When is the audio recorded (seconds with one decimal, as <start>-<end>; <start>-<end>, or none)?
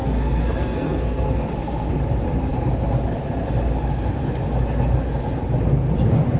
1.9-6.4